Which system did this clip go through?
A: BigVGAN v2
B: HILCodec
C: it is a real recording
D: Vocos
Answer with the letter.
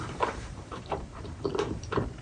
A